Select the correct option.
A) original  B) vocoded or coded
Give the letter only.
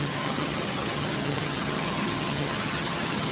B